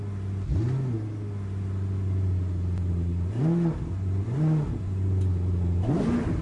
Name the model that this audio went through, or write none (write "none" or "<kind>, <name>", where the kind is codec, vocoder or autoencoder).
none